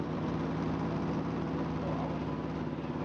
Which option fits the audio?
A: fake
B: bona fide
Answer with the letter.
B